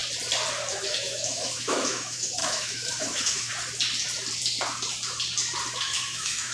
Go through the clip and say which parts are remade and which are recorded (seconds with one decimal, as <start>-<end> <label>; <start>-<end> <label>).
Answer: 0.0-0.7 recorded; 0.7-3.5 remade; 3.5-5.8 recorded; 5.8-6.5 remade